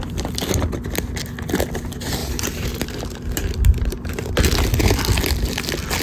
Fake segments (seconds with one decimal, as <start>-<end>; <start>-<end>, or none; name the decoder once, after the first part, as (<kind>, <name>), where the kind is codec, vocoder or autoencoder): 2.2-4.3 (vocoder, BigVGAN v2)